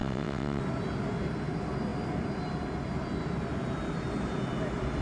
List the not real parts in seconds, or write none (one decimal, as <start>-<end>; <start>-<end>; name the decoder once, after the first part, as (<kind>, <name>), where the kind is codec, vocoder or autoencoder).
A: 0.0-0.6 (vocoder, WaveNeXt)